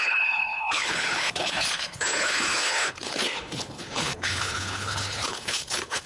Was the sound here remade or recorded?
remade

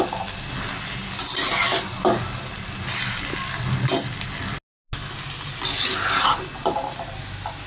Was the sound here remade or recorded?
recorded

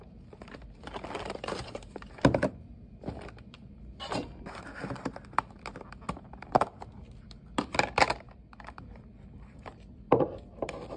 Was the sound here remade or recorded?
recorded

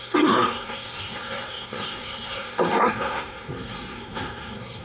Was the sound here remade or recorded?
remade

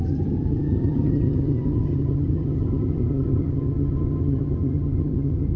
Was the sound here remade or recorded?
remade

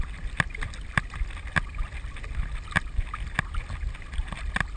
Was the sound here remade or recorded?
recorded